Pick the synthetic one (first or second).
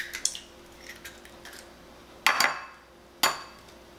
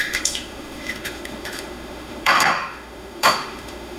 second